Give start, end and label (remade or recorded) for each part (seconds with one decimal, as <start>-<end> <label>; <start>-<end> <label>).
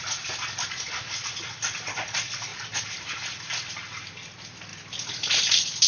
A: 0.0-2.5 recorded; 2.5-4.1 remade; 4.1-5.9 recorded